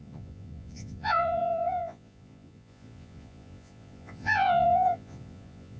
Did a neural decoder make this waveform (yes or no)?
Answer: yes